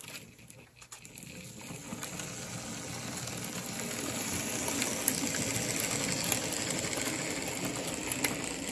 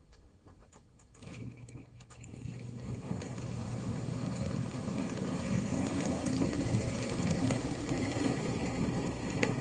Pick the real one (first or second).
first